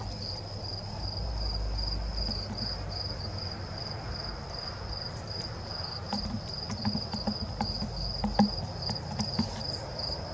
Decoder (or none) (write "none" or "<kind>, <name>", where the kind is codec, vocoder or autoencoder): none